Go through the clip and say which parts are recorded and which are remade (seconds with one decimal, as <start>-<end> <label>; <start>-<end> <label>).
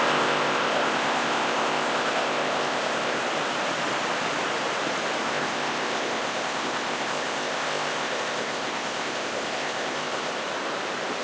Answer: 0.0-3.2 remade; 3.2-5.2 recorded; 5.2-10.3 remade; 10.3-11.2 recorded